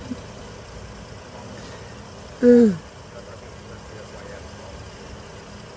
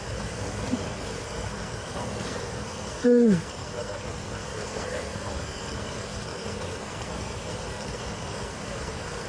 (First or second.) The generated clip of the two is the second